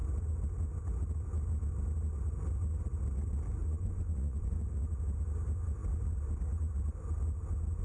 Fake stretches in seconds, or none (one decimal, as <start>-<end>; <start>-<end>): 3.6-4.8